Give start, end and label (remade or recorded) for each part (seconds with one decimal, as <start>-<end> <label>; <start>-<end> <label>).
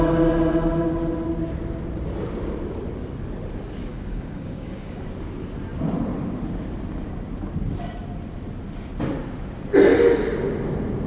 0.0-3.9 recorded; 3.9-5.0 remade; 5.0-11.1 recorded